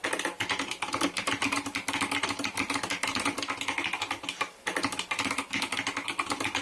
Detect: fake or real real